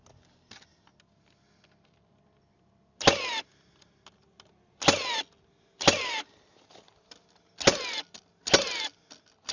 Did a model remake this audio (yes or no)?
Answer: no